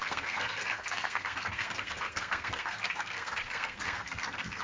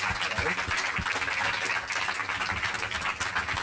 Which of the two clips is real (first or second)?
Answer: second